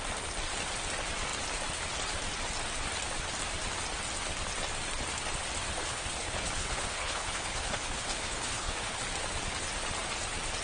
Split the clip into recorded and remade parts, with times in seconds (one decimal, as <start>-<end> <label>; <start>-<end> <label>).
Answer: 0.0-5.9 recorded; 5.9-9.0 remade; 9.0-10.6 recorded